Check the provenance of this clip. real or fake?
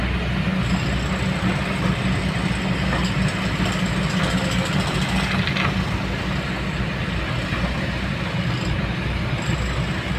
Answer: real